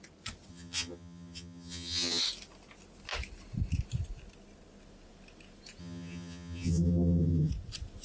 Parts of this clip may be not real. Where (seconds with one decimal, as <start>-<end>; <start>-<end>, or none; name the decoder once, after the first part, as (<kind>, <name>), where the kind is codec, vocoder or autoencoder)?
0.5-2.2 (vocoder, HiFi-GAN); 5.8-7.5